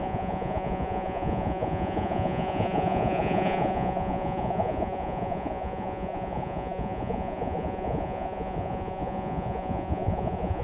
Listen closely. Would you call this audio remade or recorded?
remade